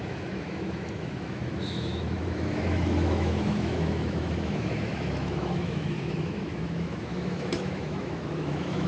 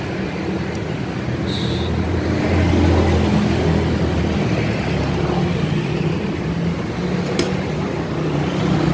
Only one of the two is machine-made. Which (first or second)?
first